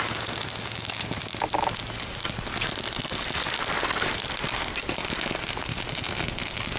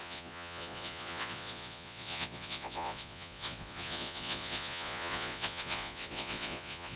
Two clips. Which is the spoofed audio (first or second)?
second